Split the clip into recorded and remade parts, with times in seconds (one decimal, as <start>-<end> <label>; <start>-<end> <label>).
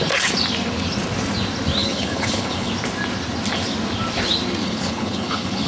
0.0-1.8 recorded; 1.8-2.7 remade; 2.7-4.6 recorded; 4.6-5.7 remade